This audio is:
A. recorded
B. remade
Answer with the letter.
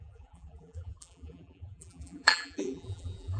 B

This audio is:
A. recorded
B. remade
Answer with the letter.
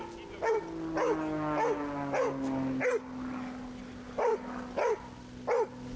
A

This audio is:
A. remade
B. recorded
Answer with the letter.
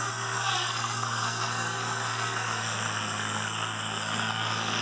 A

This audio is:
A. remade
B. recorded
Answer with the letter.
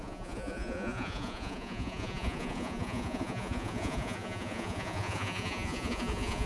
A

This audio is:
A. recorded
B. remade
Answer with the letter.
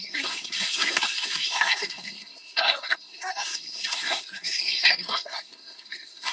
B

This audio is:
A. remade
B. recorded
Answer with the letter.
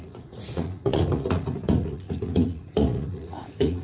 A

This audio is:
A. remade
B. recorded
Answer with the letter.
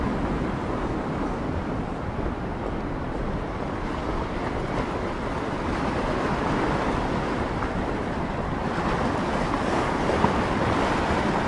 B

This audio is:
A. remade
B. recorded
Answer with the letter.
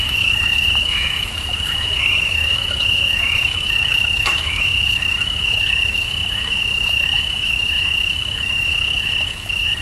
A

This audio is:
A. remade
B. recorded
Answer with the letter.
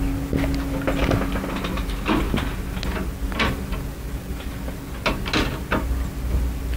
B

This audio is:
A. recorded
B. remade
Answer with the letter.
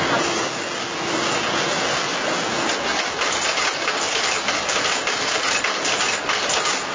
A